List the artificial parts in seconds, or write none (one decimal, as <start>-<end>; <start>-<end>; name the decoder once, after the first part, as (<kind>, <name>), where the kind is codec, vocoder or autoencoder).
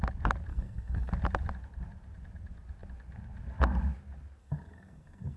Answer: 0.5-1.1 (codec, SNAC); 4.4-5.4